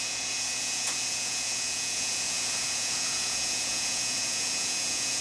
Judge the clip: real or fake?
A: fake